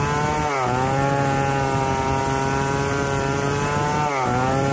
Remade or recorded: recorded